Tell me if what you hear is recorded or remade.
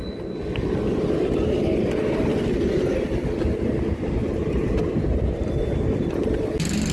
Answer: recorded